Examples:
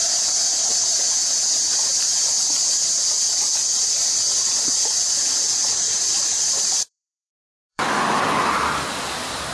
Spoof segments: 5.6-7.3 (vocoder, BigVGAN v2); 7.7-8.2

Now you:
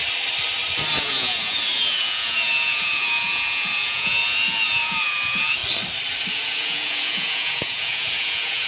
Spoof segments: 1.0-5.6 (vocoder, Vocos); 6.3-8.7

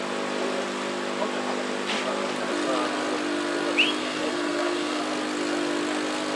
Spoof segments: 4.0-5.0 (codec, SNAC)

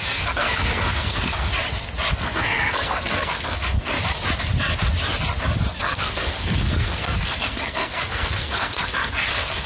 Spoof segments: 0.0-1.5 (codec, SNAC); 2.1-3.9; 5.8-9.7

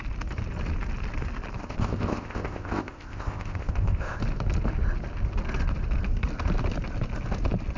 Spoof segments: 1.6-4.2 (codec, ZipCodec)